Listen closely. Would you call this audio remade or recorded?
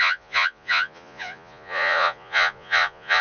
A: remade